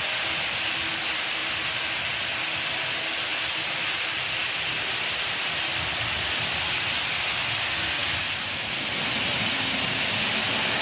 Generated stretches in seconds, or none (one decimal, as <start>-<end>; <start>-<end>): 1.4-2.3